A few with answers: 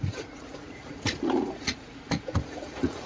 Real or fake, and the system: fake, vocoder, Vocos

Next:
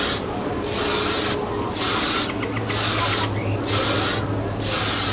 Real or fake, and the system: real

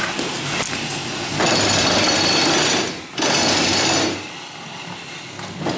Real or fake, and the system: real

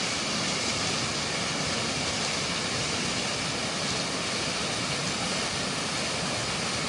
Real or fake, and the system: real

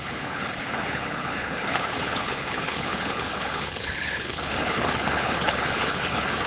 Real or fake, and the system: fake, codec, HILCodec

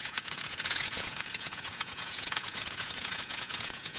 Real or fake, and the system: fake, vocoder, Vocos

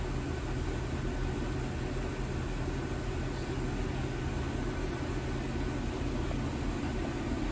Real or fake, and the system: real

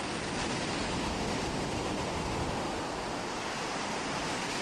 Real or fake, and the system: real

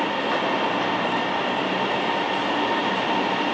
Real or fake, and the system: real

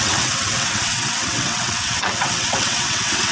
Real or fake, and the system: fake, vocoder, WaveNeXt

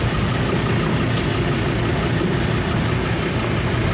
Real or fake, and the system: real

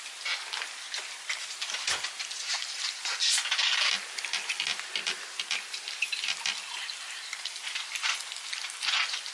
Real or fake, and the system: real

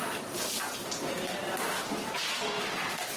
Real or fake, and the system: real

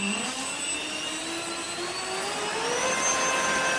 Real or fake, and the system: real